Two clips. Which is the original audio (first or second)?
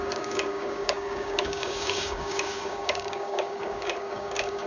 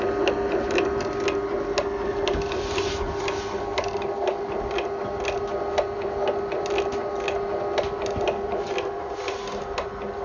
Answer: second